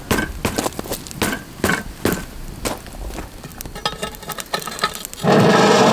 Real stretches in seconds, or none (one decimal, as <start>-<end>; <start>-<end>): 0.0-5.9